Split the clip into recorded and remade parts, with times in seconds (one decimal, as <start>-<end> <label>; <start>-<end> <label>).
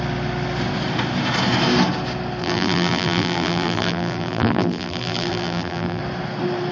0.0-2.4 recorded; 2.4-6.0 remade; 6.0-6.7 recorded